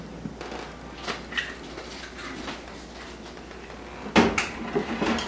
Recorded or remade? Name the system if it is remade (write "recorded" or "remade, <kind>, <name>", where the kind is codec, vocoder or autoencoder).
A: recorded